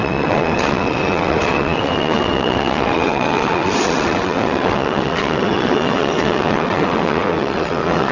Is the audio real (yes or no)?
no